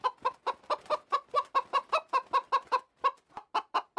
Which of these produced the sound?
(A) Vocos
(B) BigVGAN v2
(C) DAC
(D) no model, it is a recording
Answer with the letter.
D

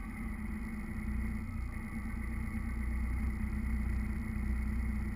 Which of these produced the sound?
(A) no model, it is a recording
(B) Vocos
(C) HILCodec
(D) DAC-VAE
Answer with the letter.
A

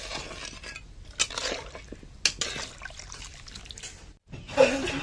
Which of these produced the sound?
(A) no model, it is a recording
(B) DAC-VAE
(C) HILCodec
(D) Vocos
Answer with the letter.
A